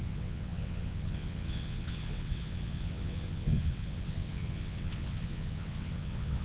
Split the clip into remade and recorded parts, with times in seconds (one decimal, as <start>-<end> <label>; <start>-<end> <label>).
0.0-6.4 remade